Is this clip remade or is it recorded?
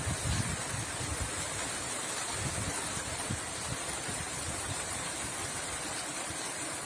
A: recorded